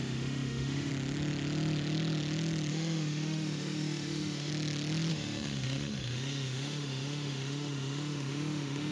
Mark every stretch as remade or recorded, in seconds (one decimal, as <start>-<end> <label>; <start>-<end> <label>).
0.0-0.9 remade; 0.9-2.7 recorded; 2.7-4.5 remade; 4.5-5.1 recorded; 5.1-8.9 remade